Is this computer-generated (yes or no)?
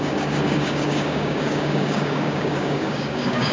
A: yes